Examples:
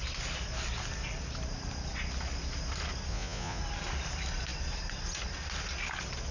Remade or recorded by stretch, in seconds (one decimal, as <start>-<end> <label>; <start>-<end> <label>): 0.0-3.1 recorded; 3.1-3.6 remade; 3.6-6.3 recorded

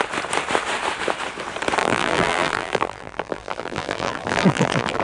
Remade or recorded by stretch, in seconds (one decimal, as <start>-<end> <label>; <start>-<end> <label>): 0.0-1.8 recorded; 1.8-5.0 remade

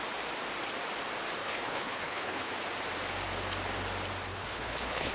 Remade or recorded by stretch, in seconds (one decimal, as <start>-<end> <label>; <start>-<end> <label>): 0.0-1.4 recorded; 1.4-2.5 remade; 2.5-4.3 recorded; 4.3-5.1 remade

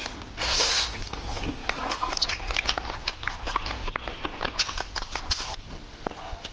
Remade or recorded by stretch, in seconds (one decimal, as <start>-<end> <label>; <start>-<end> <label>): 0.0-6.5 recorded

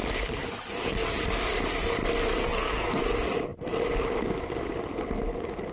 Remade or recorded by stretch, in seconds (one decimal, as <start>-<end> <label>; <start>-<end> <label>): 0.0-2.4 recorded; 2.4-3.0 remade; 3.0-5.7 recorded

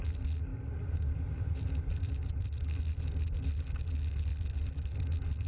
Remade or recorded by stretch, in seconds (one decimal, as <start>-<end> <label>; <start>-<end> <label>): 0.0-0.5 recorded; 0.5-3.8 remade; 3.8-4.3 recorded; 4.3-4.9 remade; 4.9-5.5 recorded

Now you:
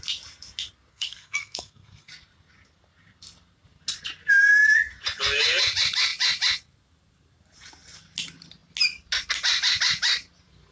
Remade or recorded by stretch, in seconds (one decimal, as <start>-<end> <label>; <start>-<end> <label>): 0.0-0.9 recorded; 0.9-2.1 remade; 2.1-10.7 recorded